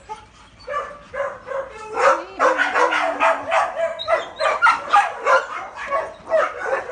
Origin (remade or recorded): recorded